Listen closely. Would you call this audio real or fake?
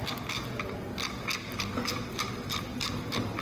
real